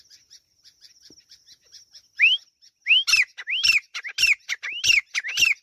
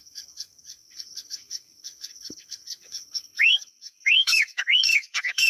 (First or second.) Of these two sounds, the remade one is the second